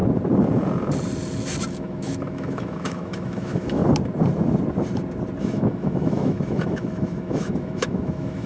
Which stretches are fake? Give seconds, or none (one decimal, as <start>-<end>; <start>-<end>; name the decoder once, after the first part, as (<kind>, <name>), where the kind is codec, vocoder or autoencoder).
1.7-3.8 (autoencoder, DAC-VAE); 5.4-8.5